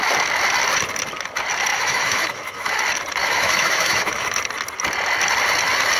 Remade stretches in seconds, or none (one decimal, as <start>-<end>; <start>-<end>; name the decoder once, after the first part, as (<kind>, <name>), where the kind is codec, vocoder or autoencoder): 1.7-2.7 (autoencoder, DAC-VAE); 3.2-4.4

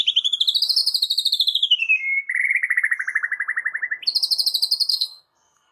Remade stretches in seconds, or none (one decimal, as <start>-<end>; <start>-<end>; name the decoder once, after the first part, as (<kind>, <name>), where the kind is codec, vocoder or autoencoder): 4.9-5.7 (codec, SNAC)